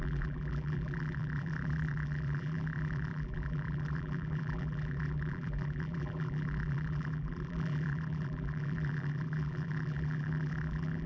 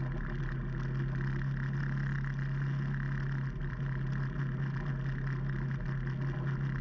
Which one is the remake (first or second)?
first